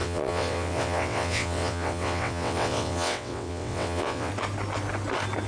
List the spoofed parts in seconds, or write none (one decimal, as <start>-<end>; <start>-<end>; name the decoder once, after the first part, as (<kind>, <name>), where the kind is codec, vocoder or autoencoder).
0.0-4.3 (vocoder, WaveNeXt)